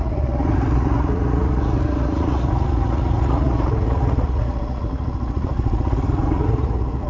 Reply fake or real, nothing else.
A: fake